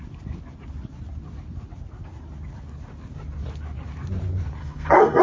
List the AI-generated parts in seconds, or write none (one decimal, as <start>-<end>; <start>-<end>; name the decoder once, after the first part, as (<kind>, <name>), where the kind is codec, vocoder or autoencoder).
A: 4.6-5.2 (codec, SNAC)

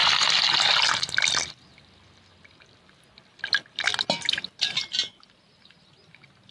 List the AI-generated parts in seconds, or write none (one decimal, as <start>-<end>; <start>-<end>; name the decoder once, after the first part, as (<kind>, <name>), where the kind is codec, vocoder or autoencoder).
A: none

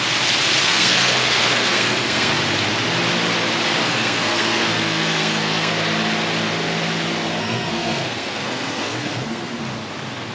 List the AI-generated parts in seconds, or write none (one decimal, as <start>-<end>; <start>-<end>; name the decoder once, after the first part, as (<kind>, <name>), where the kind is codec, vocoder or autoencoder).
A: 0.6-2.3 (codec, SNAC); 3.8-5.7; 7.4-9.6

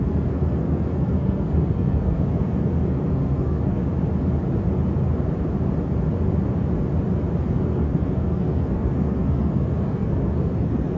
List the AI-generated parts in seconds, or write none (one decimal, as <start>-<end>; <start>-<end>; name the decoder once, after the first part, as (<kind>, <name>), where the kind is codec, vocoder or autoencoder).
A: 0.0-3.8 (codec, SNAC); 7.4-11.0

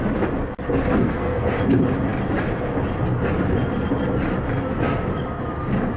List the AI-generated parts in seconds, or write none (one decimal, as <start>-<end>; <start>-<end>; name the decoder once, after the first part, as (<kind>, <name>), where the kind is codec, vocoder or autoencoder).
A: 1.0-1.5 (codec, SNAC)

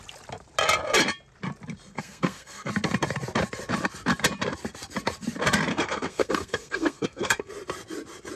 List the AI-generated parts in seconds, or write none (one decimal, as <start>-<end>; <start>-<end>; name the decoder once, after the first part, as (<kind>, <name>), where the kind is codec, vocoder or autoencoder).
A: 1.9-2.7 (codec, SNAC); 5.7-7.5